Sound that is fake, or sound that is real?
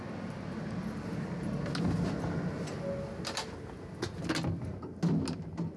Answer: real